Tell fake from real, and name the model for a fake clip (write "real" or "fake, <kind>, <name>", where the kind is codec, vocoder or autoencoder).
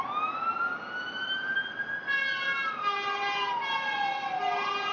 real